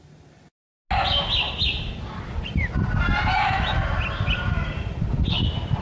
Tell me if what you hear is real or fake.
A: real